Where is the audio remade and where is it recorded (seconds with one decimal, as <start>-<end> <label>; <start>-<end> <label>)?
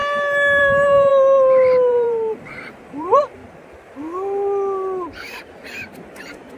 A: 0.0-0.6 recorded; 0.6-1.1 remade; 1.1-1.9 recorded; 1.9-3.4 remade; 3.4-6.6 recorded